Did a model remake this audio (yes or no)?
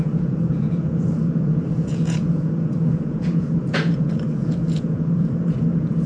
yes